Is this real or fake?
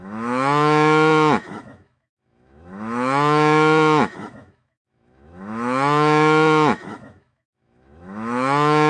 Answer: fake